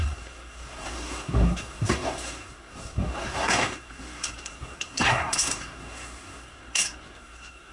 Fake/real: fake